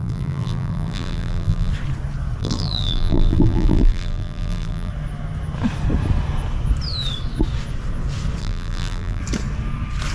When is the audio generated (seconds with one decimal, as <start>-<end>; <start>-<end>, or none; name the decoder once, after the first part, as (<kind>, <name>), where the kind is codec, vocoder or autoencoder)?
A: 0.0-1.7 (vocoder, BigVGAN v2); 2.4-4.9; 8.4-9.2